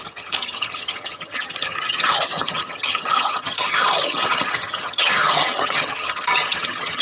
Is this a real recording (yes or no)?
no